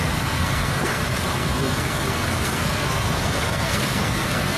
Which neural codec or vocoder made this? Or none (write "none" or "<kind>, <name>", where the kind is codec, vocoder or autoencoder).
codec, SNAC